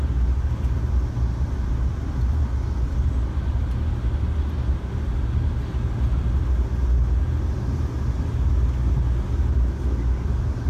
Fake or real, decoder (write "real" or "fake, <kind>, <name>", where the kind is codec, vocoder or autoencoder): real